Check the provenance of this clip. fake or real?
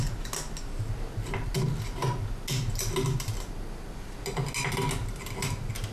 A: real